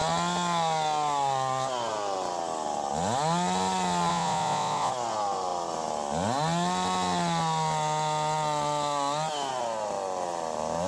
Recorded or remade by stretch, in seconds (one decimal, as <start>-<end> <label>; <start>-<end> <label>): 0.0-4.1 recorded; 4.1-4.9 remade; 4.9-10.9 recorded

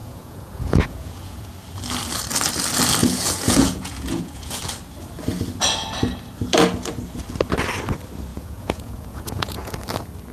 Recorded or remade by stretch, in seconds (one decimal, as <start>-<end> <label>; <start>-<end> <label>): 0.0-1.5 remade; 1.5-3.0 recorded; 3.0-4.6 remade; 4.6-8.3 recorded; 8.3-9.7 remade; 9.7-10.3 recorded

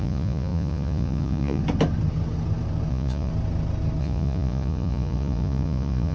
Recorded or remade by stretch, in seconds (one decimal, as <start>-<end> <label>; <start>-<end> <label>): 0.0-1.6 remade; 1.6-2.9 recorded; 2.9-3.3 remade; 3.3-4.0 recorded; 4.0-6.1 remade

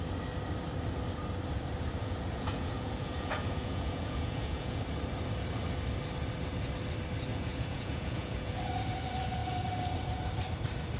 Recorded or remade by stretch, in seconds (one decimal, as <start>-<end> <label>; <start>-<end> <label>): 0.0-2.0 recorded; 2.0-4.8 remade; 4.8-7.3 recorded; 7.3-8.6 remade; 8.6-11.0 recorded

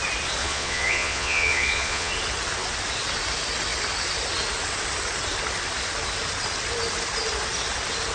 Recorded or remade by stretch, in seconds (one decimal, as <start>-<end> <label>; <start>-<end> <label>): 0.0-0.4 recorded; 0.4-2.1 remade; 2.1-8.1 recorded

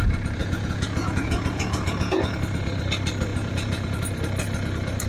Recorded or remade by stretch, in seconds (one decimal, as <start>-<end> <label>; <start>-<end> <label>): 0.0-0.4 recorded; 0.4-2.3 remade; 2.3-3.3 recorded; 3.3-4.0 remade; 4.0-5.1 recorded

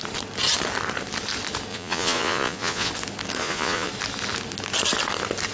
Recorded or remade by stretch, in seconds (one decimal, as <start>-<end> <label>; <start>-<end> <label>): 0.0-1.7 recorded; 1.7-2.9 remade; 2.9-3.4 recorded; 3.4-3.9 remade; 3.9-5.5 recorded